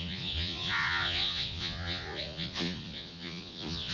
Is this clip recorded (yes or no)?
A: no